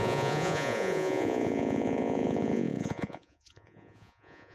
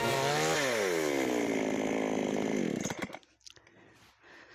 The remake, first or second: first